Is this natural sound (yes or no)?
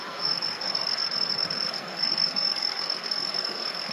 no